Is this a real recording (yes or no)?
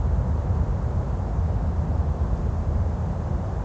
no